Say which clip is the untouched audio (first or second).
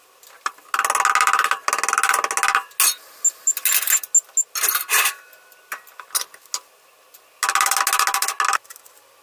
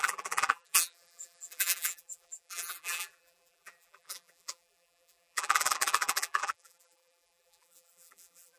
first